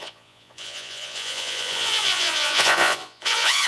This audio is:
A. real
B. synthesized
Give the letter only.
B